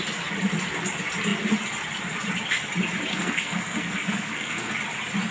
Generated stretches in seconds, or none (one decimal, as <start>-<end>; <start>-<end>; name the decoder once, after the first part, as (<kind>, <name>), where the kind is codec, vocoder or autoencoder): 3.1-4.7 (codec, SNAC)